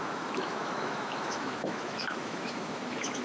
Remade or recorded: remade